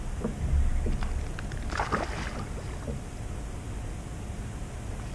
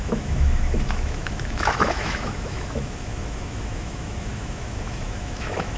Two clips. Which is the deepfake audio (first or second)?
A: second